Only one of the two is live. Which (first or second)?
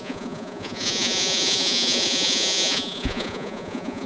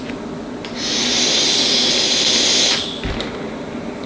second